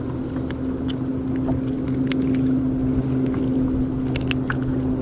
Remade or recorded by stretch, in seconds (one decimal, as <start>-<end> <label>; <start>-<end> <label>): 0.0-5.0 recorded

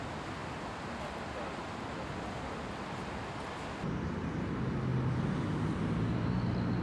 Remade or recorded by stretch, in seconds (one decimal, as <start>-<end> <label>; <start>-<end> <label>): 0.0-6.8 recorded

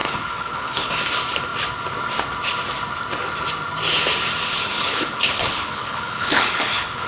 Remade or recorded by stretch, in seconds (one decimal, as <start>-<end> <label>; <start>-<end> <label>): 0.0-0.9 remade; 0.9-4.5 recorded; 4.5-7.1 remade

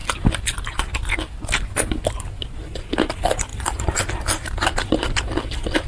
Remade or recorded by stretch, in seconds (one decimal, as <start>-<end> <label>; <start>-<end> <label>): 0.0-3.5 recorded; 3.5-4.0 remade; 4.0-5.9 recorded

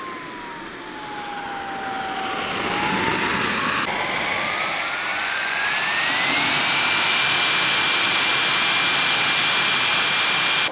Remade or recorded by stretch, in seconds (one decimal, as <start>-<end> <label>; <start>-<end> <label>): 0.0-5.1 recorded; 5.1-5.7 remade; 5.7-10.7 recorded

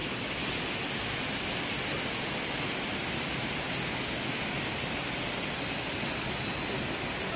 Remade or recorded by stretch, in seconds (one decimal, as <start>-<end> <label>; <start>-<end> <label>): 0.0-7.4 recorded

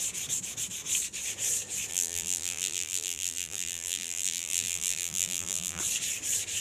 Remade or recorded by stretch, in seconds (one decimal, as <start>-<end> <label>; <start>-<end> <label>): 0.0-1.9 recorded; 1.9-5.8 remade; 5.8-6.6 recorded